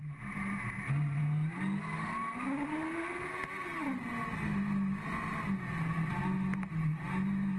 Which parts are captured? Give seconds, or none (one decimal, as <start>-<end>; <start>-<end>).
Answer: 0.0-7.6

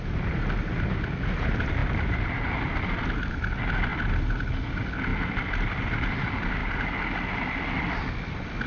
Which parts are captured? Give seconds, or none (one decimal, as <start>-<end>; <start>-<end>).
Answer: 0.0-8.7

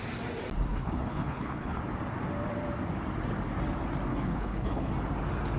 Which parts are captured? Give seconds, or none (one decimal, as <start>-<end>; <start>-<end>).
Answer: 0.0-0.7; 1.8-4.1; 4.9-5.6

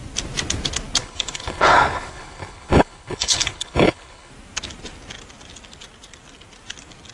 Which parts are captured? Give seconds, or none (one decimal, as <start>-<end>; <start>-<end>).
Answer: 0.0-1.0; 4.3-7.1

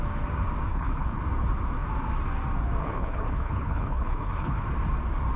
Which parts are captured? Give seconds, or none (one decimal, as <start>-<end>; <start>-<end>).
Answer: 0.0-0.7; 1.2-2.8; 4.6-5.4

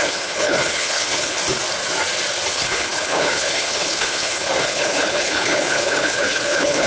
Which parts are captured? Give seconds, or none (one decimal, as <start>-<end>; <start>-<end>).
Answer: 1.4-2.5

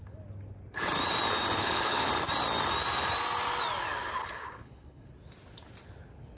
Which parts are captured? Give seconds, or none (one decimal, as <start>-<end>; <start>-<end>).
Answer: 0.0-1.6; 2.1-4.2; 5.1-6.4